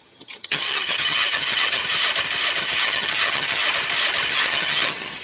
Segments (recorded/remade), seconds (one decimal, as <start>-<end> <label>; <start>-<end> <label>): 0.0-1.8 remade; 1.8-2.6 recorded; 2.6-3.6 remade; 3.6-4.3 recorded; 4.3-5.2 remade